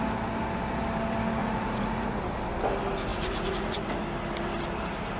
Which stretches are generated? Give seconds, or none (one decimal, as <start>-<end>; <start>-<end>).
1.4-2.2; 3.1-3.9